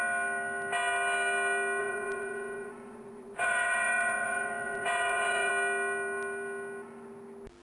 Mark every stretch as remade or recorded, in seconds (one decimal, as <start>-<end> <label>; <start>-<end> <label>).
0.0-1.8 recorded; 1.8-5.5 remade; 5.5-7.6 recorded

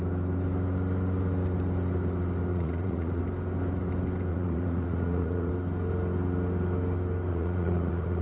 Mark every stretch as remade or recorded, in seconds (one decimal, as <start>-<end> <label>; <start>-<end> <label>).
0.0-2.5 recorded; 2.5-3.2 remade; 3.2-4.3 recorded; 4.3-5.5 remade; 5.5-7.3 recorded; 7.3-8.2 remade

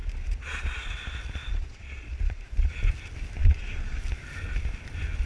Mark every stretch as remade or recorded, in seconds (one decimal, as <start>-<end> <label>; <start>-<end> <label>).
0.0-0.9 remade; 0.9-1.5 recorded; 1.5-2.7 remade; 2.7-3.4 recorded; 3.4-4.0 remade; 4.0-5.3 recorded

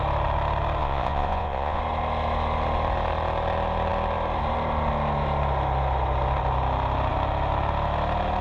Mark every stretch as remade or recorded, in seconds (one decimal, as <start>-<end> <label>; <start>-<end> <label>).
0.0-0.8 recorded; 0.8-1.8 remade; 1.8-8.4 recorded

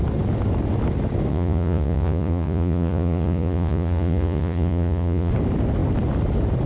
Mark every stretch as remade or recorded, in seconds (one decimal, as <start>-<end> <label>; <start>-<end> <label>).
0.0-1.3 recorded; 1.3-5.3 remade; 5.3-6.7 recorded

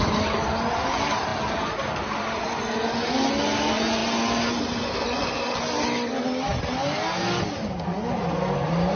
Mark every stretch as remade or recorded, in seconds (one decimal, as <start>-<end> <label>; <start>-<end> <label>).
0.0-9.0 recorded

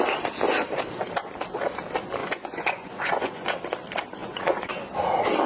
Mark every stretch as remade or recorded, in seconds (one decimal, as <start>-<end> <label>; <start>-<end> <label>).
0.0-2.2 recorded; 2.2-3.5 remade; 3.5-4.2 recorded; 4.2-4.7 remade; 4.7-5.5 recorded

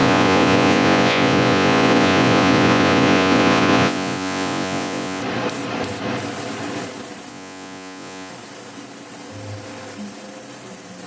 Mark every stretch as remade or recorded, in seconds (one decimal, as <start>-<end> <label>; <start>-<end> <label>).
0.0-5.2 remade; 5.2-7.3 recorded; 7.3-8.3 remade; 8.3-11.1 recorded